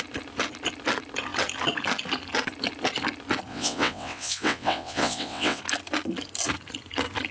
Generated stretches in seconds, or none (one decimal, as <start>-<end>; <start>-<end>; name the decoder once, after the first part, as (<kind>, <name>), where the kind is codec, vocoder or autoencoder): 3.5-5.6 (vocoder, WaveNeXt)